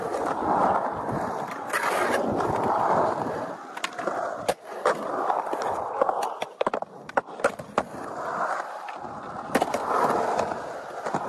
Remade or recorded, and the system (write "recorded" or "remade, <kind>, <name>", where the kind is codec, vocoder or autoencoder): recorded